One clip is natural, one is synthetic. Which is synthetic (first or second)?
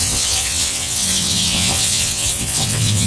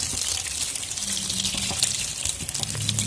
first